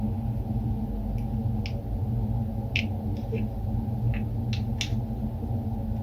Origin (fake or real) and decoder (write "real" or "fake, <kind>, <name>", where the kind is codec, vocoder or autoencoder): real